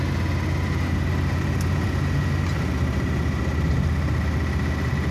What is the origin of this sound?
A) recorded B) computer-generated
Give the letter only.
A